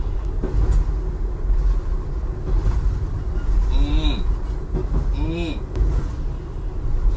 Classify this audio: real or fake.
real